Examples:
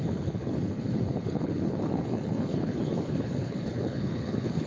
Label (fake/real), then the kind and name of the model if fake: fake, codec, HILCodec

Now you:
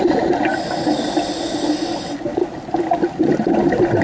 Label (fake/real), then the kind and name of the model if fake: real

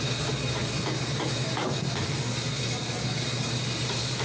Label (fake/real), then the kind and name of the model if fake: real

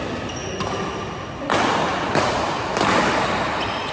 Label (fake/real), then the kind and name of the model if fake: real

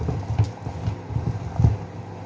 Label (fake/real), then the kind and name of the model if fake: real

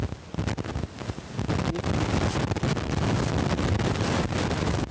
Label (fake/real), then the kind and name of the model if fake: real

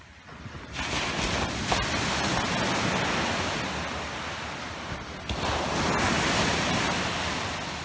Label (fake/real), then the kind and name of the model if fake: real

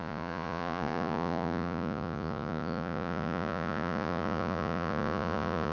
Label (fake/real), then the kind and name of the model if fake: fake, vocoder, Vocos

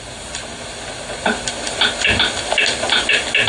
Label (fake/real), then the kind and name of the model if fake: real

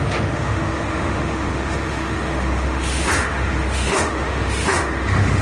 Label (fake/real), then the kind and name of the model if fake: fake, autoencoder, DAC-VAE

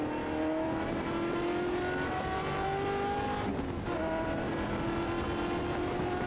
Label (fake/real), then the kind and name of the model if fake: real